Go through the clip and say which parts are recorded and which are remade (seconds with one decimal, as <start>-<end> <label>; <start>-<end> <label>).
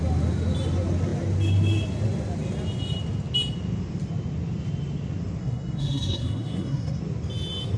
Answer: 0.0-5.4 recorded; 5.4-7.0 remade; 7.0-7.8 recorded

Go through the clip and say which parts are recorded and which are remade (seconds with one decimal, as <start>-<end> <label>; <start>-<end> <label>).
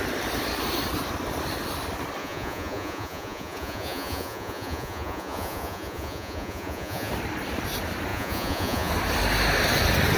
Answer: 0.0-2.2 recorded; 2.2-7.1 remade; 7.1-8.1 recorded; 8.1-8.9 remade; 8.9-10.2 recorded